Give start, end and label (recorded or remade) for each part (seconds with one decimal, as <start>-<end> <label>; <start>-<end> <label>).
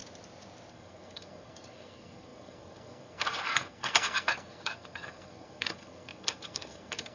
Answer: 0.0-0.7 recorded; 0.7-7.1 remade